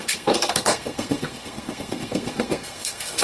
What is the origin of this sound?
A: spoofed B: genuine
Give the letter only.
A